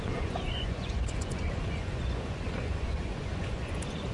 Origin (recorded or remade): remade